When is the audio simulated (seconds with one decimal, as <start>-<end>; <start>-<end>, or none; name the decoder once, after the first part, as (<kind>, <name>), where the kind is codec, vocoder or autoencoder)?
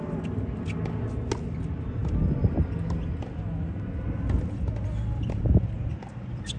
none